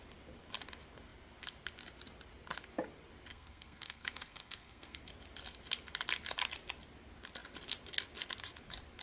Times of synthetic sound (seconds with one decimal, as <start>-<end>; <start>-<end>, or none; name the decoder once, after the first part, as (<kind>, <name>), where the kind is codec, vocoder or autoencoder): 3.3-5.0 (codec, SNAC)